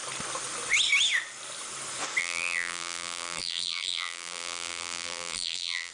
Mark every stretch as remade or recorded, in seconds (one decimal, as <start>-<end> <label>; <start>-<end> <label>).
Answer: 0.0-2.2 recorded; 2.2-5.9 remade